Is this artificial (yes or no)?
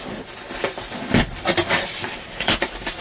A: yes